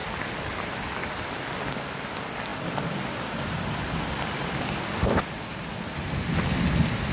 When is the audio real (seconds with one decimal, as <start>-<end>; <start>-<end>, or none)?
0.0-7.1